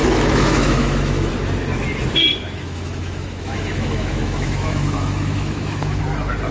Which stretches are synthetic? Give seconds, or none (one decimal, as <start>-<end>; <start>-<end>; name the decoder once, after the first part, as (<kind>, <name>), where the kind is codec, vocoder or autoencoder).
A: 0.0-1.3 (autoencoder, DAC-VAE); 2.3-6.0